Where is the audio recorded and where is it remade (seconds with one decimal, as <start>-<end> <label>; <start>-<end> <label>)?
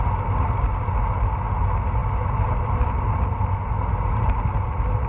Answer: 0.0-5.1 recorded